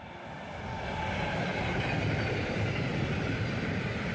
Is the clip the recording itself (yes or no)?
yes